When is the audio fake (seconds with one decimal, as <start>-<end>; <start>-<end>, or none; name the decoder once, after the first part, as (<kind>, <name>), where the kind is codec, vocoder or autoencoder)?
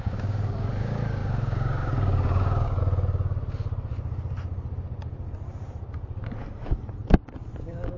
0.0-2.8 (codec, DAC); 7.6-8.0